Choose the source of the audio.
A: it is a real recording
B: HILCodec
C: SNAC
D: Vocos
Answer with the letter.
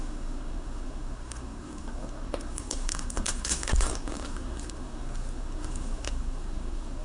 C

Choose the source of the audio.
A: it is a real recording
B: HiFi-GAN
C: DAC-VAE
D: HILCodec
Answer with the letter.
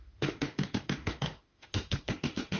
C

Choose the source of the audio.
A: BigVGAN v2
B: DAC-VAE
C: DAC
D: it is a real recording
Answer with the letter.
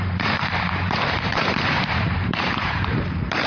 A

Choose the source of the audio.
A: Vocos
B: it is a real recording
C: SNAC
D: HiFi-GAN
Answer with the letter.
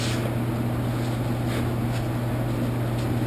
B